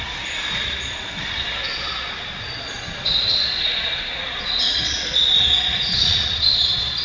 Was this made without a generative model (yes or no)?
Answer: no